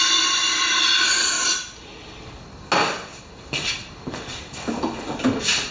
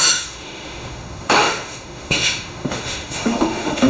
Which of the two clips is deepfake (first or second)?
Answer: second